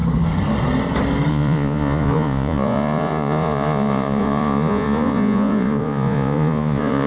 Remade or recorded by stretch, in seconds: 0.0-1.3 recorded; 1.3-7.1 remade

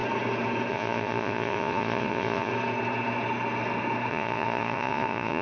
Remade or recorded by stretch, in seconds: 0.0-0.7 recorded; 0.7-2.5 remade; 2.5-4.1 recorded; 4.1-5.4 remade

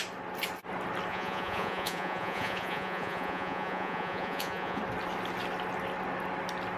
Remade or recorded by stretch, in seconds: 0.0-1.1 recorded; 1.1-4.8 remade; 4.8-6.8 recorded

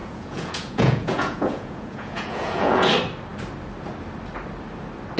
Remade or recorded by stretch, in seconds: 0.0-2.9 remade; 2.9-5.2 recorded

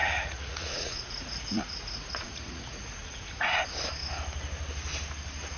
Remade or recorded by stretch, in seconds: 0.0-3.4 remade; 3.4-5.6 recorded

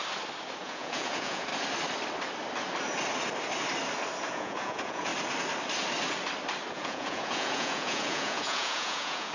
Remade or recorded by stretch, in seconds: 0.0-0.6 recorded; 0.6-1.5 remade; 1.5-4.3 recorded; 4.3-5.1 remade; 5.1-6.7 recorded; 6.7-9.3 remade